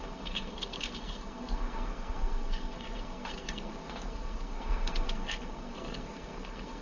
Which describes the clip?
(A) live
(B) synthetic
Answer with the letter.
B